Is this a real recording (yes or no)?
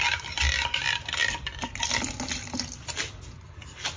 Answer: yes